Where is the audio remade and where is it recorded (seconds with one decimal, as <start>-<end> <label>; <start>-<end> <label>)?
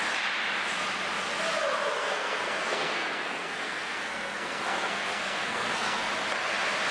0.0-2.0 recorded; 2.0-6.1 remade; 6.1-6.9 recorded